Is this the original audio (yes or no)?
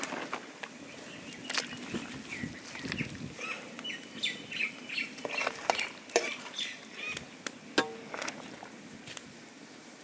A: yes